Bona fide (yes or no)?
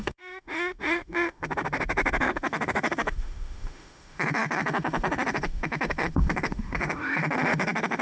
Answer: no